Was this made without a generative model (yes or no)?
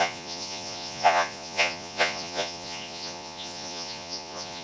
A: no